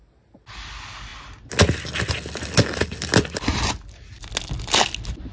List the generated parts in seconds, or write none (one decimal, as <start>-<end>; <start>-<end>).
none